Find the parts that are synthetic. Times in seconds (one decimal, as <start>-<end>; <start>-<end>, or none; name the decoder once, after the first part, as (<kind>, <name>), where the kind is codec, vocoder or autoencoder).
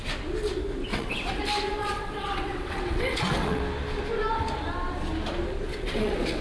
0.8-1.4 (vocoder, WaveNeXt); 1.8-3.6; 5.7-6.4